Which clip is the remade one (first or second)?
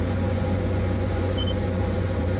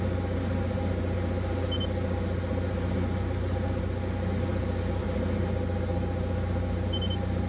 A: first